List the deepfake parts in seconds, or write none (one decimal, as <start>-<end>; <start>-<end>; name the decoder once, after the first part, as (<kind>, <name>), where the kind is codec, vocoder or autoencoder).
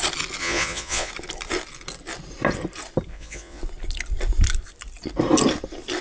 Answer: 0.4-1.1 (vocoder, Vocos); 3.1-3.6